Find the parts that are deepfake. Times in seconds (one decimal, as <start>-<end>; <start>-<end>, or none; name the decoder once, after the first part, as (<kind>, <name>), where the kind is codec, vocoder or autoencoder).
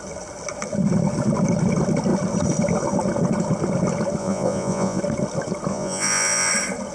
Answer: 4.2-5.0 (vocoder, Vocos); 5.7-6.5